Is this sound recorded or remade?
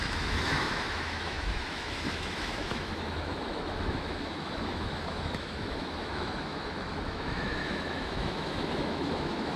remade